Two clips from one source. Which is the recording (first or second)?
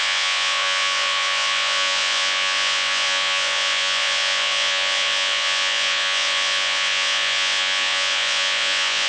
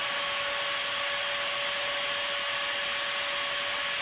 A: second